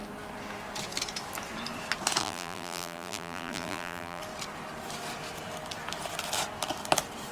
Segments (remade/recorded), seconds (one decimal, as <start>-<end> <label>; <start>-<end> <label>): 0.0-2.2 recorded; 2.2-4.2 remade; 4.2-7.3 recorded